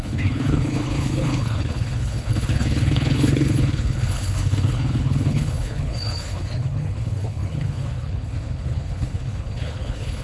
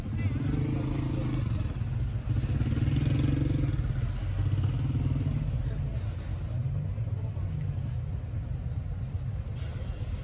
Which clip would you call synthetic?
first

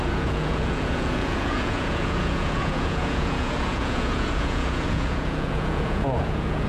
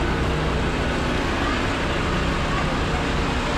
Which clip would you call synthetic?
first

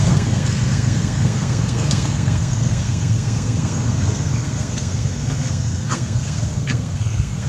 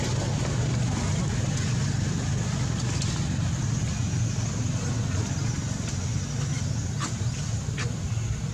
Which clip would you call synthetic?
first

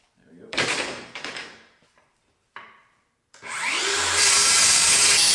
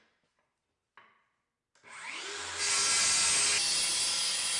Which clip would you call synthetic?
first